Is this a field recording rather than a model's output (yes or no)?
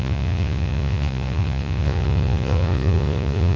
no